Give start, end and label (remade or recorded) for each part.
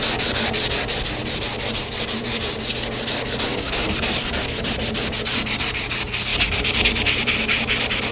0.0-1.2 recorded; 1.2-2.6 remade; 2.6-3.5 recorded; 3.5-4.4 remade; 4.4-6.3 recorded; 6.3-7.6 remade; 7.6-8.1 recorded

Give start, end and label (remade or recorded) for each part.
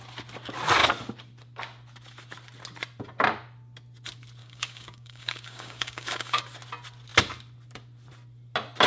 0.0-4.4 recorded; 4.4-6.4 remade; 6.4-8.9 recorded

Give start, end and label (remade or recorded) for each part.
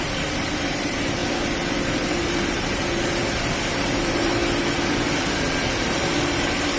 0.0-1.2 remade; 1.2-1.8 recorded; 1.8-3.2 remade; 3.2-3.8 recorded; 3.8-4.4 remade; 4.4-5.5 recorded; 5.5-6.8 remade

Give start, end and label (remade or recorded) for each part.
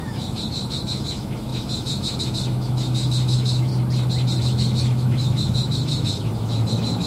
0.0-3.7 remade; 3.7-4.4 recorded; 4.4-7.1 remade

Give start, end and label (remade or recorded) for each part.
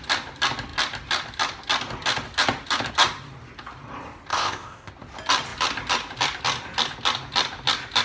0.0-4.3 recorded; 4.3-4.9 remade; 4.9-8.0 recorded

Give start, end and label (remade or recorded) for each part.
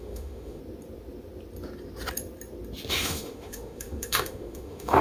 0.0-0.6 remade; 0.6-2.9 recorded; 2.9-5.0 remade